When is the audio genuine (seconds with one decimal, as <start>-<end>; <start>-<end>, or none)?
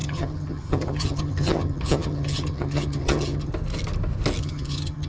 3.5-4.4